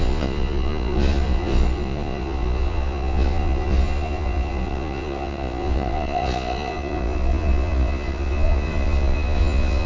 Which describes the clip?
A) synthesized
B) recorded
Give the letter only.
A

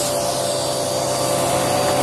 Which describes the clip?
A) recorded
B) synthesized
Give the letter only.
A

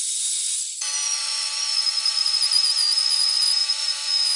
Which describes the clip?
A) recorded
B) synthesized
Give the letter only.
B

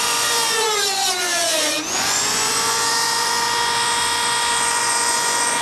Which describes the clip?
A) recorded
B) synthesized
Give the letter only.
B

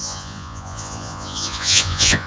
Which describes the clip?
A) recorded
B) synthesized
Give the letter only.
B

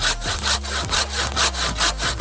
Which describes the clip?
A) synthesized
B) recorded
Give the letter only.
B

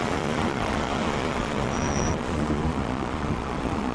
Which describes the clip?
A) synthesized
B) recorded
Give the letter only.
A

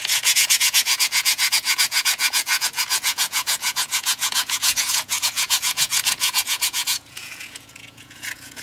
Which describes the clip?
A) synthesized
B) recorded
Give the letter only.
A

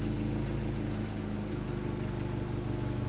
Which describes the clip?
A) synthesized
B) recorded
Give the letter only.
B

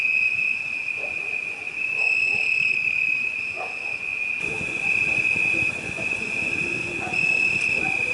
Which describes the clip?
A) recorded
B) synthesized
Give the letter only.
B